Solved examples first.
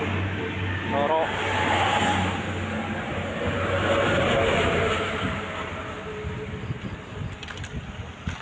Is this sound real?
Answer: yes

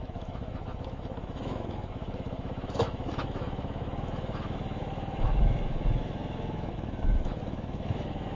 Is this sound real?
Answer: no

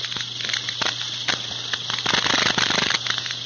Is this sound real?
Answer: yes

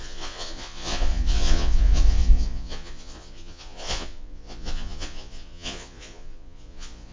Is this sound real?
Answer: no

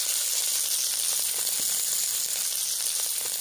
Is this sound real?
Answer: yes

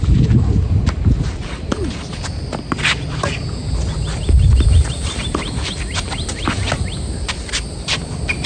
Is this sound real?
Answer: no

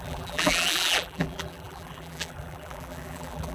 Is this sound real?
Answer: no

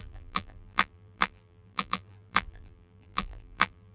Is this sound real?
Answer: no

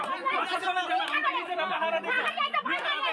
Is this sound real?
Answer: yes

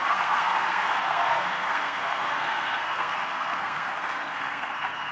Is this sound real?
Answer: no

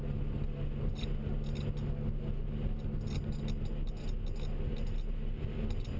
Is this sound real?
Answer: yes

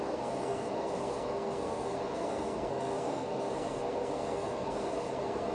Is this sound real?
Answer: no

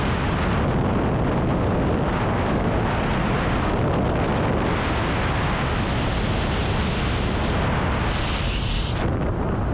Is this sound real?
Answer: yes